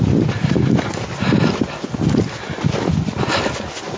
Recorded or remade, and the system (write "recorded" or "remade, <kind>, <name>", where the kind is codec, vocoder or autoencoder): recorded